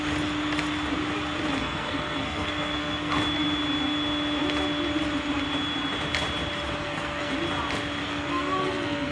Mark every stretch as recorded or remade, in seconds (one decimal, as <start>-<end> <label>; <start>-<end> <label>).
0.0-1.6 recorded; 1.6-3.1 remade; 3.1-6.8 recorded; 6.8-7.3 remade; 7.3-8.0 recorded; 8.0-9.1 remade